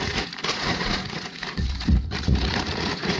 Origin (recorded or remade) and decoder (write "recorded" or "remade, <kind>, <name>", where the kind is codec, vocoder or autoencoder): remade, vocoder, Vocos